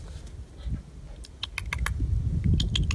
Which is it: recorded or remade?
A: recorded